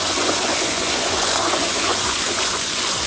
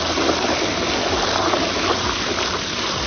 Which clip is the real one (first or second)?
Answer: second